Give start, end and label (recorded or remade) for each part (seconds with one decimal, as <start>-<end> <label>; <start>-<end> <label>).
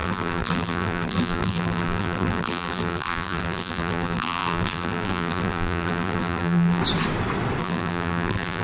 0.0-6.8 remade; 6.8-7.6 recorded; 7.6-8.6 remade